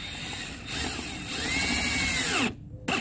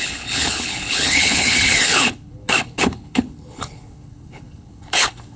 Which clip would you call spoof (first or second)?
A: second